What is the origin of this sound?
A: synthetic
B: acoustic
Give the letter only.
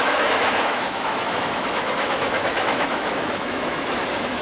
A